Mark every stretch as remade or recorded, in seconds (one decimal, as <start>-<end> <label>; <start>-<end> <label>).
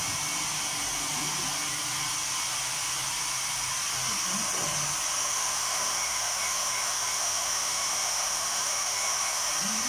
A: 0.0-5.2 recorded; 5.2-9.5 remade; 9.5-9.9 recorded